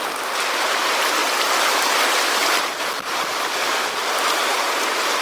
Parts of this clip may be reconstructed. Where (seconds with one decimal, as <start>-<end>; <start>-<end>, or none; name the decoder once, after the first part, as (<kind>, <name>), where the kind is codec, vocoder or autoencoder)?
1.2-4.3 (vocoder, BigVGAN v2)